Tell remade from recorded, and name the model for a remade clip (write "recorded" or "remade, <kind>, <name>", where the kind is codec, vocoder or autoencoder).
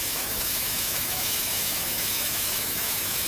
remade, autoencoder, DAC-VAE